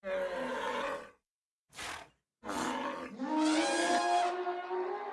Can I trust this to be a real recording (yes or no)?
yes